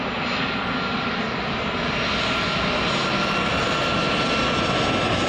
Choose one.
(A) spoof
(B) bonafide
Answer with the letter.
B